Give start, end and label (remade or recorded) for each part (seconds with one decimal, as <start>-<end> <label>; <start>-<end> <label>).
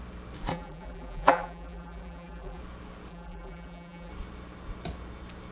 0.0-0.5 recorded; 0.5-2.6 remade; 2.6-3.1 recorded; 3.1-4.1 remade; 4.1-5.5 recorded